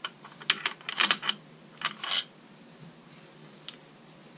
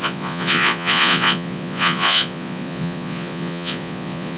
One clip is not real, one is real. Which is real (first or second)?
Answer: first